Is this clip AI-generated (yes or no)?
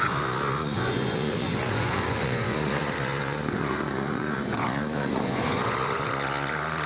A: yes